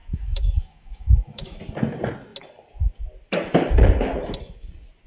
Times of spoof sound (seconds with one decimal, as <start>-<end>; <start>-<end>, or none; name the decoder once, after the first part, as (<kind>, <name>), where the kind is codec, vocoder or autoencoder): 0.0-1.6 (autoencoder, DAC-VAE)